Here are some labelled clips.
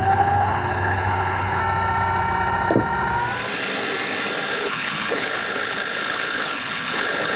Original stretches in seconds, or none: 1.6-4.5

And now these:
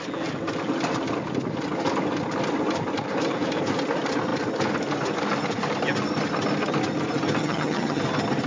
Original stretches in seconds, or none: 0.0-7.4; 8.0-8.5